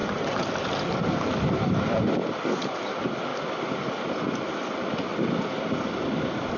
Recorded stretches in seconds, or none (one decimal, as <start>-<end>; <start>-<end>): 2.9-5.1; 6.0-6.6